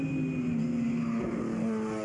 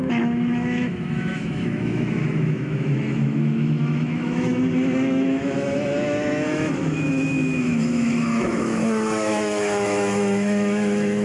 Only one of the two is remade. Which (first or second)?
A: second